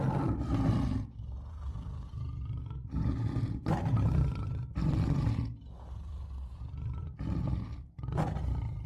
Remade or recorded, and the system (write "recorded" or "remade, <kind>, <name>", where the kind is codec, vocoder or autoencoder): remade, vocoder, BigVGAN v2